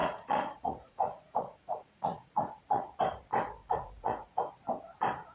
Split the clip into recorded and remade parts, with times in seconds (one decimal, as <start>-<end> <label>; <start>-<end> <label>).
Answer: 0.0-3.0 remade; 3.0-3.6 recorded; 3.6-4.5 remade; 4.5-5.3 recorded